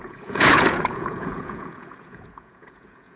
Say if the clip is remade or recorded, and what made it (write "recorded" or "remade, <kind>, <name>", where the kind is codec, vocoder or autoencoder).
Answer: remade, vocoder, Vocos